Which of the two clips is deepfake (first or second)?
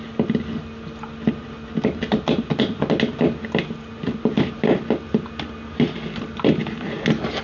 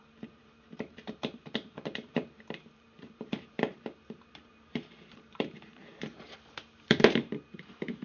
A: second